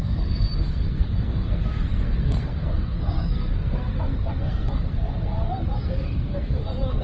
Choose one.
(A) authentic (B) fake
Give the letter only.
B